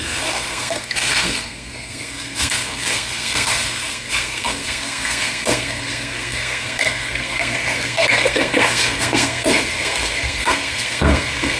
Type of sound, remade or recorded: remade